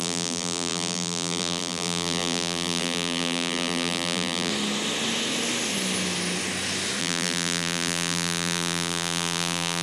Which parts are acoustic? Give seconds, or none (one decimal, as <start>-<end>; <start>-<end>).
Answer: 4.5-7.0

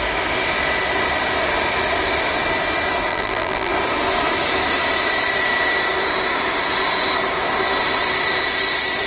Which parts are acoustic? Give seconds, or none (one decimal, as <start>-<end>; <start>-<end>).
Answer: 0.0-3.1; 3.7-9.1